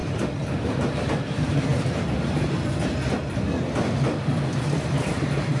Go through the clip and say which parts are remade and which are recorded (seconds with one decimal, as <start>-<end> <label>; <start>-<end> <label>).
0.0-0.5 recorded; 0.5-1.7 remade; 1.7-5.1 recorded; 5.1-5.6 remade